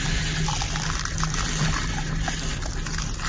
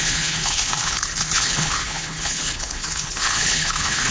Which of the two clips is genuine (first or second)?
first